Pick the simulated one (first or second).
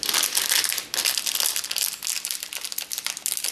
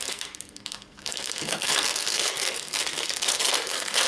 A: second